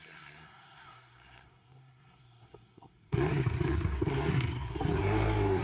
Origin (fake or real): fake